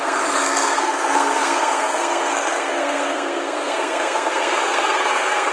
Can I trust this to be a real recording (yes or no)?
no